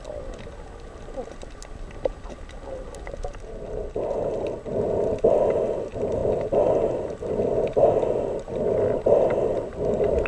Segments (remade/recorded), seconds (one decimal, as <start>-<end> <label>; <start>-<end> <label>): 0.0-10.3 recorded